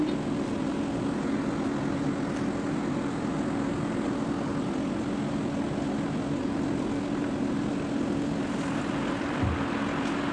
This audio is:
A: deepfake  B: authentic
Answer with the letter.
B